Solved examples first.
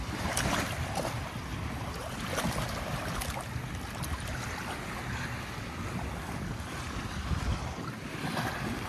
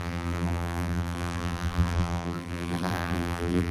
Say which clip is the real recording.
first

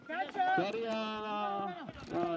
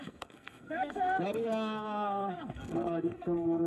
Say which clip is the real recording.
first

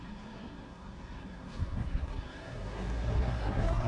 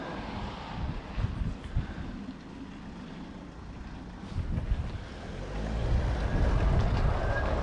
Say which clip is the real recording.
second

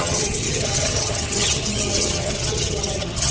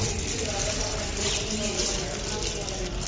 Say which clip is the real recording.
second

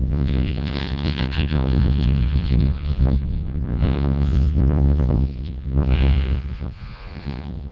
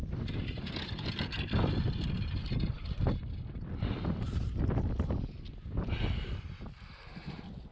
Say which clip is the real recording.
second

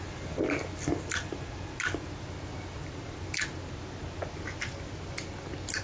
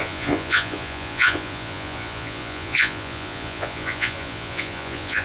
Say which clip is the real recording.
first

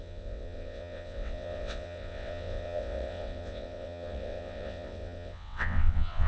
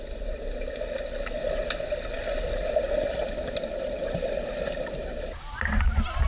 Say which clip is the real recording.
second